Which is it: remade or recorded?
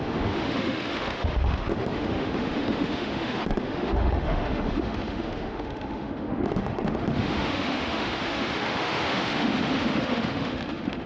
remade